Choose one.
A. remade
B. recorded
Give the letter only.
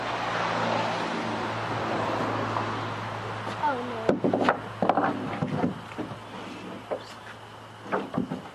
B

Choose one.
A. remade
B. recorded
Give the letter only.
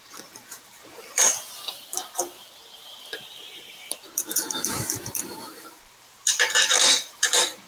A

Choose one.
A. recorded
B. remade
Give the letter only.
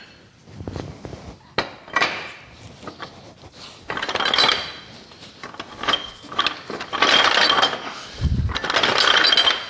A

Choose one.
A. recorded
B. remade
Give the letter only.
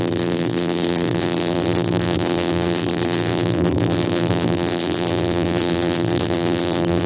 B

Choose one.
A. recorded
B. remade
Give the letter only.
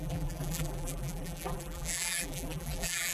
B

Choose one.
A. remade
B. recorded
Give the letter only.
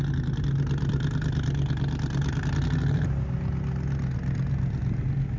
B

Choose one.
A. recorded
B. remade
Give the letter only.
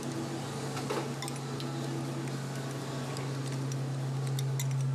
A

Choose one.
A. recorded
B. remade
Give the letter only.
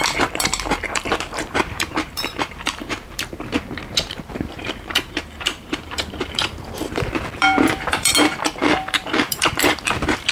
B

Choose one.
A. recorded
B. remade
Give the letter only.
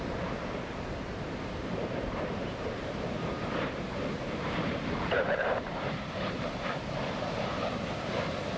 B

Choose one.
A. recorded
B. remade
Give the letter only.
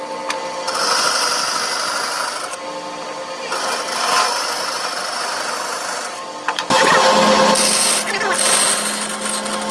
A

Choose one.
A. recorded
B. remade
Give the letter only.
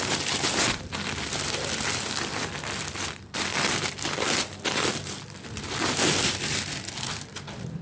B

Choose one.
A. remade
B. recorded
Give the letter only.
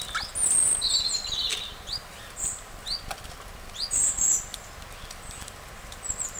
B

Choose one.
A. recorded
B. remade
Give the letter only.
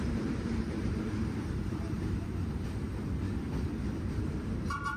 B